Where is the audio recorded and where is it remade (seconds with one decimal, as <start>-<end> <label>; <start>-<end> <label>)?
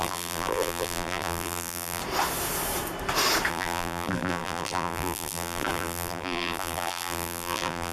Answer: 0.0-2.0 remade; 2.0-3.5 recorded; 3.5-7.9 remade